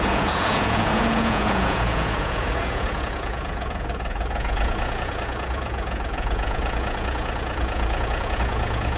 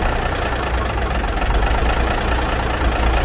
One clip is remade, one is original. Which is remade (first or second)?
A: first